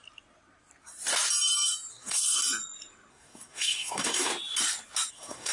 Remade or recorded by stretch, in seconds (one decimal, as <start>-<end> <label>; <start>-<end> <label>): 0.0-1.9 recorded; 1.9-2.4 remade; 2.4-3.1 recorded; 3.1-4.3 remade; 4.3-5.1 recorded; 5.1-5.5 remade